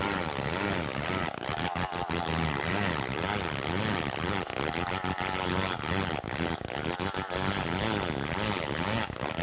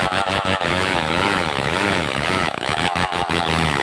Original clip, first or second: first